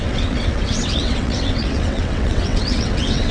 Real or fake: fake